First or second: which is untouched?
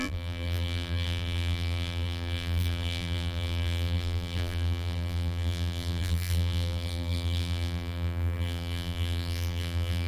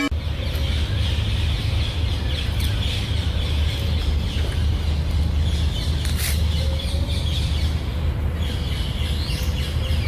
second